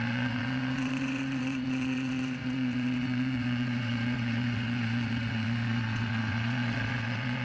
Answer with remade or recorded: remade